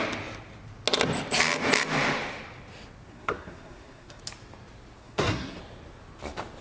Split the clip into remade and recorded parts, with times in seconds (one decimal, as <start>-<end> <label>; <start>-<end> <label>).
0.0-3.1 recorded; 3.1-4.2 remade; 4.2-5.0 recorded; 5.0-5.6 remade; 5.6-6.6 recorded